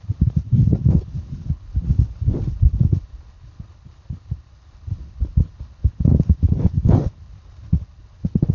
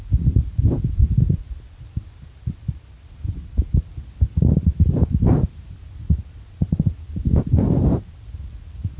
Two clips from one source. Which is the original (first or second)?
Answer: second